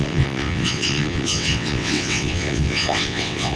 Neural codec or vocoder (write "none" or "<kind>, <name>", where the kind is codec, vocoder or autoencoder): vocoder, WaveNeXt